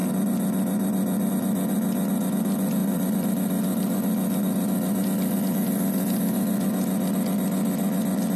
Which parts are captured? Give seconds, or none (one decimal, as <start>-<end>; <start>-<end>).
1.3-8.4